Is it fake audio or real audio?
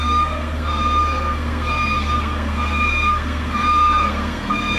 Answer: fake